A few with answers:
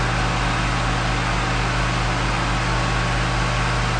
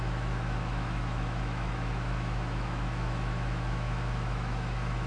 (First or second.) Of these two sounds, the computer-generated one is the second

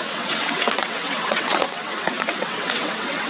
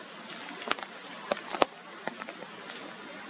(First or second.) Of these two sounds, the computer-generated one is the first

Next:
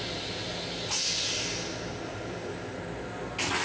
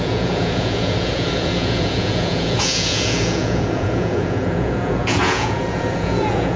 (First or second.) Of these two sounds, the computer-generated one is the second